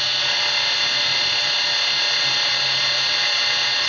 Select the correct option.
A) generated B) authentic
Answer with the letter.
B